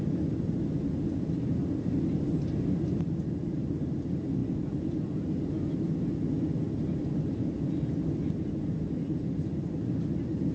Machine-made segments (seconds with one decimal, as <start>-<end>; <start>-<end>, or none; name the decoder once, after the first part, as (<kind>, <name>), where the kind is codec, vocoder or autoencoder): none